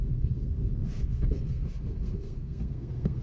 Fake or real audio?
fake